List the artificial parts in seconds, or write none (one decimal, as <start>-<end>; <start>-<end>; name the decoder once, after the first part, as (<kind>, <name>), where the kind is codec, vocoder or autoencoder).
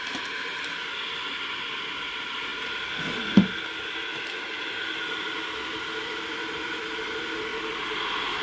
2.5-3.0 (vocoder, BigVGAN v2); 7.5-8.4